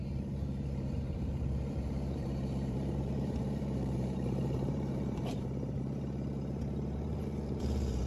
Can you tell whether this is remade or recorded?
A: remade